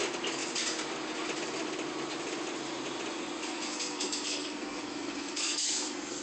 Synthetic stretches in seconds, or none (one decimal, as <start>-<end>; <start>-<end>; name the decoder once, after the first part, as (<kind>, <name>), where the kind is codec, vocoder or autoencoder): 3.4-6.2 (codec, SNAC)